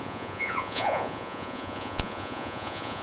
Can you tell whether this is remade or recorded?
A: remade